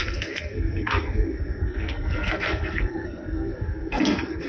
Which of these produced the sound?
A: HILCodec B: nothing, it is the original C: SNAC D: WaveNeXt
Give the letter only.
C